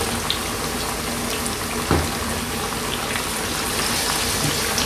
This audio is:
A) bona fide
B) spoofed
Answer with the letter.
A